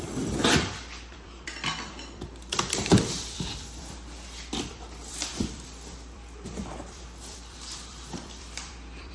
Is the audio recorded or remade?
remade